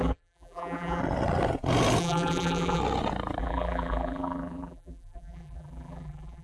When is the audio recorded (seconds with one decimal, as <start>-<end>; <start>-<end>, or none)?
1.0-2.0; 2.8-3.4